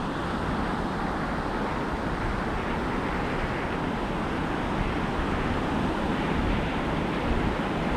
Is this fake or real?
real